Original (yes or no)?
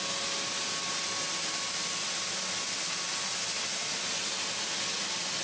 yes